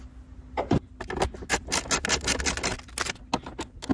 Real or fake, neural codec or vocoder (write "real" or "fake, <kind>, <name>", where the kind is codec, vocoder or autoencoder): real